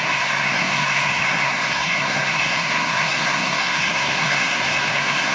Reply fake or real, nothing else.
fake